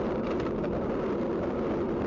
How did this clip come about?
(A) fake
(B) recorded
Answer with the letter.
A